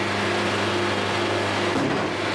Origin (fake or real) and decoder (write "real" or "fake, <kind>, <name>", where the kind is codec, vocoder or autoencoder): real